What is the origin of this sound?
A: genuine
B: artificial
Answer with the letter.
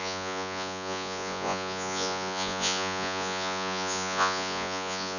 B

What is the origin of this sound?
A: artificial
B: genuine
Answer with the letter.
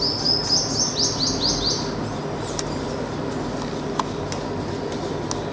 B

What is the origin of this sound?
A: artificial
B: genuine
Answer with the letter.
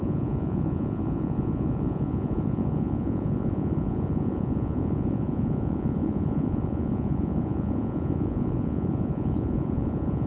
A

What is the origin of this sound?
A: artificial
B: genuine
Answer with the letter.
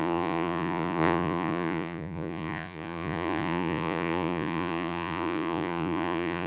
A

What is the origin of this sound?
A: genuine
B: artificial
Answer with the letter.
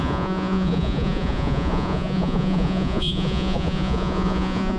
B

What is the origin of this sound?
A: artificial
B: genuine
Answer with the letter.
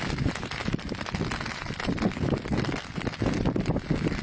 B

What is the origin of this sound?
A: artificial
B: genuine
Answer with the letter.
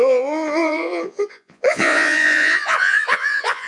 A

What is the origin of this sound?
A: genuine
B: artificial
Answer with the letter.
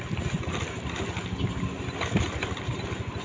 A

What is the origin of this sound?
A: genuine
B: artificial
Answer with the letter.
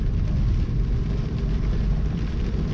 A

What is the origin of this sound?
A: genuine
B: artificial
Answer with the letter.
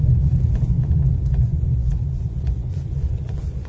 B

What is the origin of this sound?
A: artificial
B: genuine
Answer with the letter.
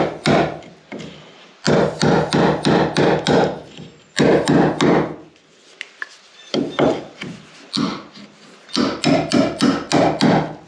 B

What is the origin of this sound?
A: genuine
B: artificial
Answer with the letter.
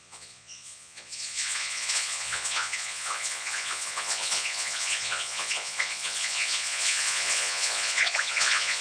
B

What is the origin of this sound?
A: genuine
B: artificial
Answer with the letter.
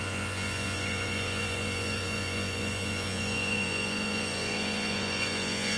B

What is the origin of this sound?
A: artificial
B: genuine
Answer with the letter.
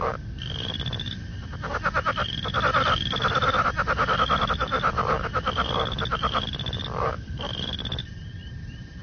B